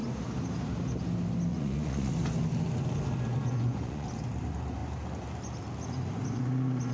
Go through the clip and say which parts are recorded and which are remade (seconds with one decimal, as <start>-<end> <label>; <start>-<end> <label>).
0.0-1.5 recorded; 1.5-2.1 remade; 2.1-3.3 recorded; 3.3-4.1 remade; 4.1-6.9 recorded

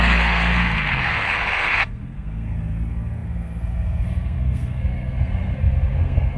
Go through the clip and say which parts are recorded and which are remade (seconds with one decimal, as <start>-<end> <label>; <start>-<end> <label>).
0.0-6.4 remade